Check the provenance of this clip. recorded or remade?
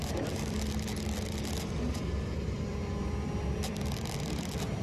remade